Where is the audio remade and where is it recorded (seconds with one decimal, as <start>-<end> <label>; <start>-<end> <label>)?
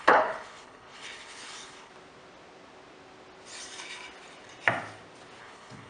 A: 0.0-1.9 remade; 1.9-5.4 recorded; 5.4-5.9 remade